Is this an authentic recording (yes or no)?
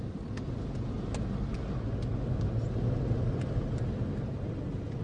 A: yes